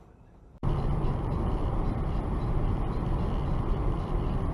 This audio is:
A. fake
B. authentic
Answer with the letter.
A